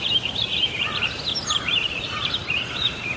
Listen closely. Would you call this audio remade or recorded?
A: remade